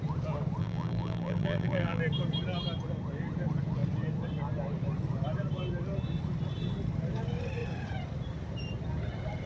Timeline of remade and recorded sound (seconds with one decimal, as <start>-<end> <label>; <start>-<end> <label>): 0.0-0.6 recorded; 0.6-2.0 remade; 2.0-9.5 recorded